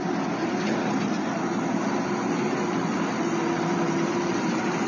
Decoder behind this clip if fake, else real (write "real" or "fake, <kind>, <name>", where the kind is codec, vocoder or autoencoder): real